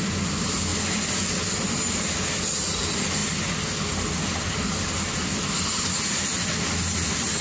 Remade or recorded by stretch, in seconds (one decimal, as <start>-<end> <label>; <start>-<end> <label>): 0.0-7.4 recorded

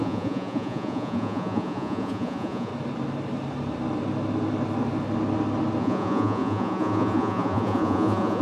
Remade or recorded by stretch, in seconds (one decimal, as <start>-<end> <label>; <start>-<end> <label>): 0.0-2.7 remade; 2.7-5.8 recorded; 5.8-8.4 remade

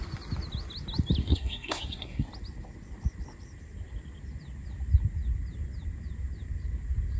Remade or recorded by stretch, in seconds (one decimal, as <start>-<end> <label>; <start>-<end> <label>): 0.0-1.2 recorded; 1.2-2.3 remade; 2.3-7.2 recorded

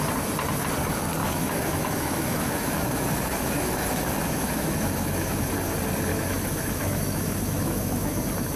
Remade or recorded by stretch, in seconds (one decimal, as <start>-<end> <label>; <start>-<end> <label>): 0.0-1.2 recorded; 1.2-5.4 remade; 5.4-6.1 recorded; 6.1-8.2 remade; 8.2-8.6 recorded

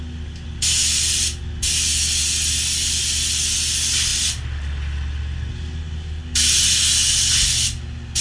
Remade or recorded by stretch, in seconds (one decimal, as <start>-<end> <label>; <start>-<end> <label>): 0.0-8.2 recorded